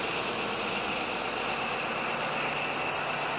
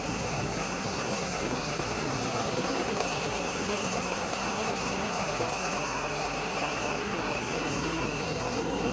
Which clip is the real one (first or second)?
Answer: first